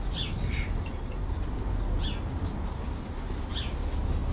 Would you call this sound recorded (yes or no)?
yes